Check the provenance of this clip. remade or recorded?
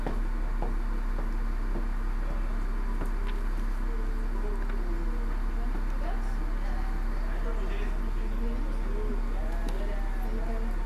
recorded